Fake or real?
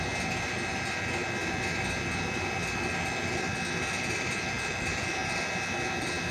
real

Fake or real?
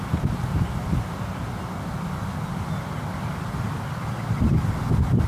real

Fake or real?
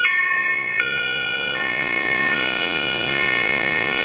fake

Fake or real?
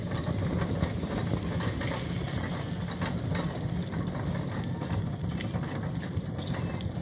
real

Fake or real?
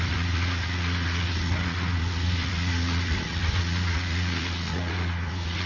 fake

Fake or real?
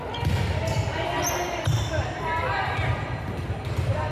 real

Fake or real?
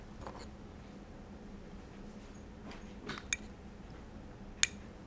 real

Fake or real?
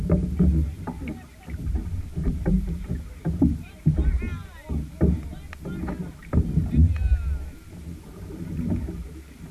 real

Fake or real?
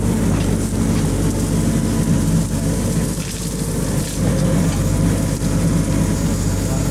real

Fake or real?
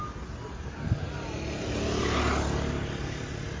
real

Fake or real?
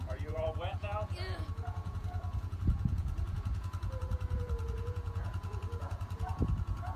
fake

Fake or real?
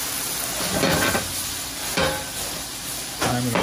real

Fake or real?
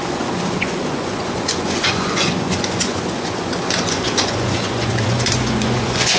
fake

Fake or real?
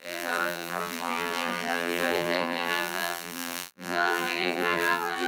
fake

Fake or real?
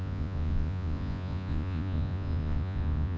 fake